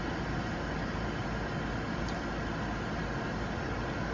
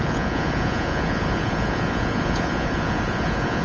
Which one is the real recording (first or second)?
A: first